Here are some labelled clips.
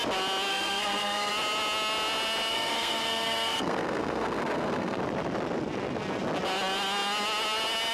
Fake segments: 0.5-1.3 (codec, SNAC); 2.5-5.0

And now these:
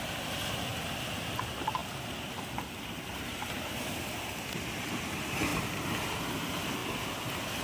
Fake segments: none